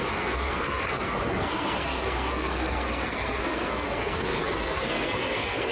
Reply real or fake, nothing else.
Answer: fake